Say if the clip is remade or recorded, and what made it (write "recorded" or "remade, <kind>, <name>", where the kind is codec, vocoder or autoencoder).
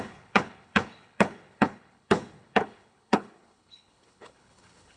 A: remade, codec, HILCodec